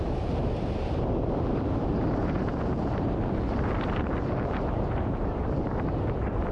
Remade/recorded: remade